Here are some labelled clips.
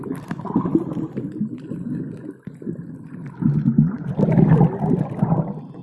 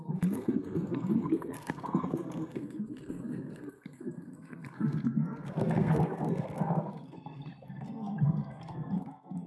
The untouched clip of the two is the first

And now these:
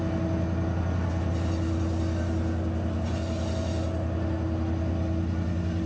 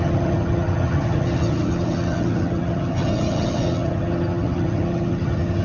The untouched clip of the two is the first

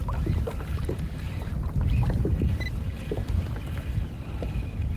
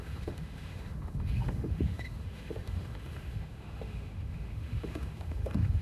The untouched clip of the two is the first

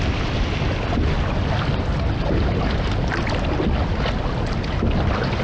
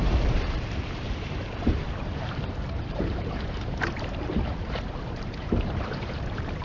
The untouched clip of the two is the first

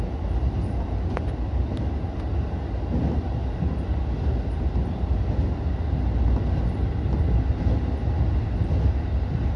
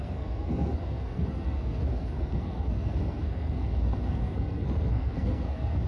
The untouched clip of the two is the first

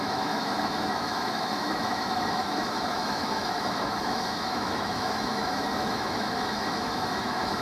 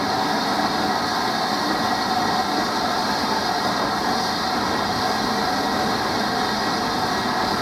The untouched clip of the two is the second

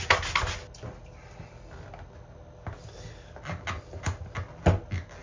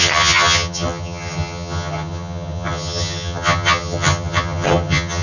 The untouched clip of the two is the first